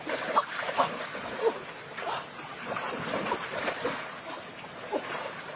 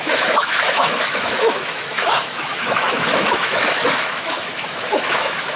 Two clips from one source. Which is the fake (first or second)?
second